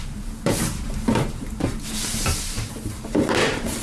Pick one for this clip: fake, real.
fake